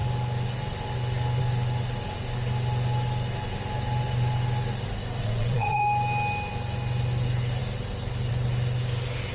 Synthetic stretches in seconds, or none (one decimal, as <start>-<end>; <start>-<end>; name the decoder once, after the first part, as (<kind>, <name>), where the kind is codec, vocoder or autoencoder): 5.2-5.8 (vocoder, Vocos)